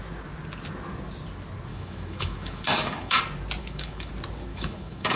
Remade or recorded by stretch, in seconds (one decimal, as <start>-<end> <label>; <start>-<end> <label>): 0.0-1.7 recorded; 1.7-3.2 remade; 3.2-3.6 recorded; 3.6-4.1 remade; 4.1-4.5 recorded; 4.5-5.2 remade